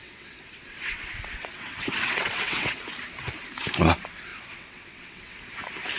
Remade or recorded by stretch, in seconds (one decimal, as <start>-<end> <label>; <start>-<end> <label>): 0.0-2.8 remade; 2.8-4.3 recorded; 4.3-5.4 remade; 5.4-6.0 recorded